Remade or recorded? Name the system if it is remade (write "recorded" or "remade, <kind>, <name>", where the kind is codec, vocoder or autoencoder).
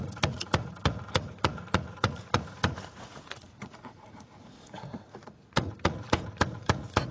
remade, vocoder, Vocos